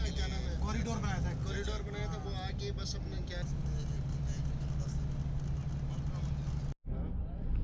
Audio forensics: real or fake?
real